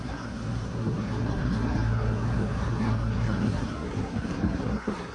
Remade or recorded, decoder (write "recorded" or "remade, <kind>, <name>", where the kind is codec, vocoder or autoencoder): remade, codec, SNAC